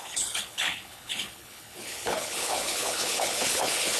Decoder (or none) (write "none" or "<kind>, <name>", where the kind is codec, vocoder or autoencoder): codec, HILCodec